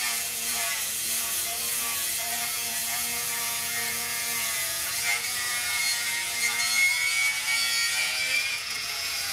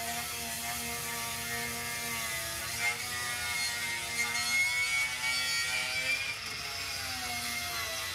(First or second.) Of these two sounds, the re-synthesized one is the first